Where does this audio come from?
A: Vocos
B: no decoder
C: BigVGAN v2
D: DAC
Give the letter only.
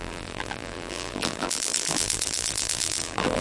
C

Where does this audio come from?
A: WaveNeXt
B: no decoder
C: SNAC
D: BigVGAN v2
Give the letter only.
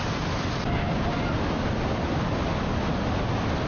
B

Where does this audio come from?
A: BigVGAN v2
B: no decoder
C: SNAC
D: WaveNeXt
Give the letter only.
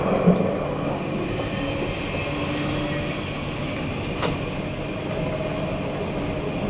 B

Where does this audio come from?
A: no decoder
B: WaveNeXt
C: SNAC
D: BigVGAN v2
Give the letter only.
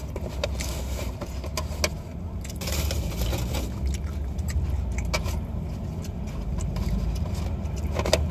A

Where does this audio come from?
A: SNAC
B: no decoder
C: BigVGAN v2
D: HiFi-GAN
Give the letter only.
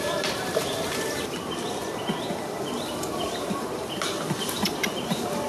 C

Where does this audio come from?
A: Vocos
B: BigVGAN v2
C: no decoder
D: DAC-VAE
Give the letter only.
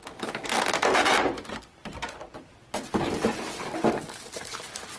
B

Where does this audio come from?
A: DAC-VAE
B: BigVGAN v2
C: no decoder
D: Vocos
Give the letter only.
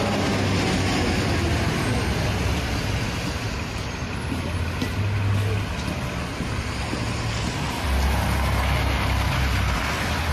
C